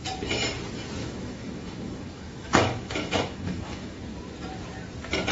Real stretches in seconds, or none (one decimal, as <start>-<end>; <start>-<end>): 0.0-1.0; 4.0-5.3